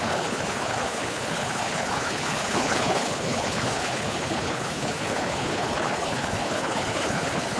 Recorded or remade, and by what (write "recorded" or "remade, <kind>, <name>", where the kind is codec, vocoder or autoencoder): remade, codec, HILCodec